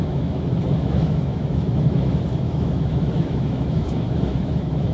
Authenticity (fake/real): fake